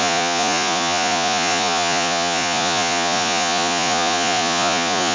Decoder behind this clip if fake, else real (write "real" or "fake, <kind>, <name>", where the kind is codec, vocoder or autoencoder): fake, vocoder, Vocos